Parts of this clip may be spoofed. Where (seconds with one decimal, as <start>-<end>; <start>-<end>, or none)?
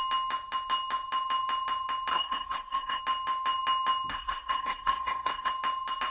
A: 2.1-3.0; 4.1-5.5